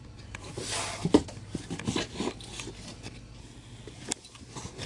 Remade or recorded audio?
recorded